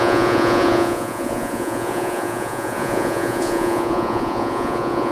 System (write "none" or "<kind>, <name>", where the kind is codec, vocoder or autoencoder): vocoder, Vocos